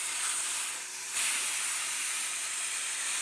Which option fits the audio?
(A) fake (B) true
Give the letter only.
B